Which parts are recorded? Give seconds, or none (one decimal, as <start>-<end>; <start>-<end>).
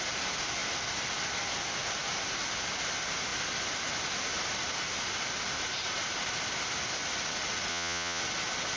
0.0-7.7; 8.2-8.8